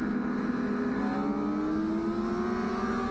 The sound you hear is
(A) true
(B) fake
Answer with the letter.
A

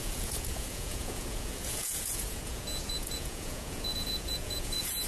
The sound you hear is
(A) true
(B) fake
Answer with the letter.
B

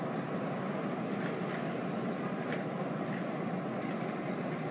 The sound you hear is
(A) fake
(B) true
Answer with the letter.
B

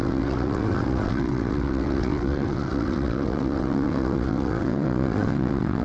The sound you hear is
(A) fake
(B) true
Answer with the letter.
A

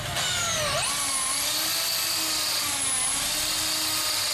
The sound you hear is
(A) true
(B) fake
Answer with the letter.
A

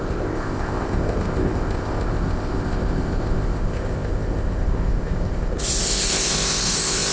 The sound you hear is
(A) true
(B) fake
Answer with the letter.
B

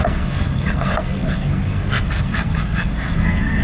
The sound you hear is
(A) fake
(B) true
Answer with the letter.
A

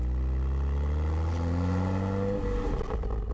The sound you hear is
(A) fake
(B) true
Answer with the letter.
B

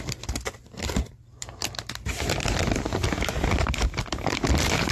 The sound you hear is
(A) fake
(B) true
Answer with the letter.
A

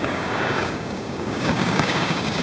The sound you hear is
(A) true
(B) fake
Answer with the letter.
B